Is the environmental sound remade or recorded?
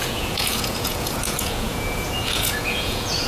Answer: remade